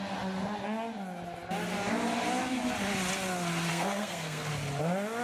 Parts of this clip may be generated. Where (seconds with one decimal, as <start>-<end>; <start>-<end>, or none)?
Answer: 3.7-4.5